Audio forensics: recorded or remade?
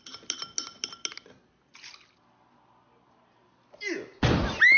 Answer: recorded